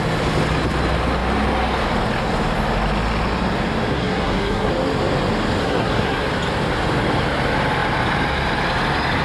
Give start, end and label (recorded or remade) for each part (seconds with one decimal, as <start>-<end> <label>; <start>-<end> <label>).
0.0-3.9 recorded; 3.9-4.7 remade; 4.7-5.6 recorded; 5.6-6.3 remade; 6.3-9.2 recorded